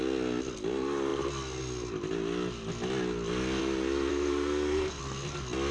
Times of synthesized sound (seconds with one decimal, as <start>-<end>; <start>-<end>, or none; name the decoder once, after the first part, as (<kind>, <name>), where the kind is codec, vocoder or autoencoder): 4.1-5.0 (codec, SNAC)